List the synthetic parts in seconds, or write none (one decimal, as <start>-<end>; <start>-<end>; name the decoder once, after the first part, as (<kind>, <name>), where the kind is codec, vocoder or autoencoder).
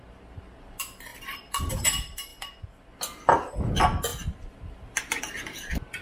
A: 1.1-1.7 (vocoder, BigVGAN v2); 2.3-3.5; 4.1-5.2